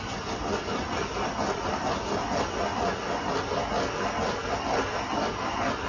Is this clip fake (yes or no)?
no